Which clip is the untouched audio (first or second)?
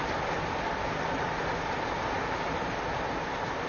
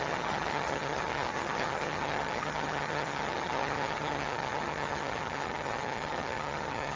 first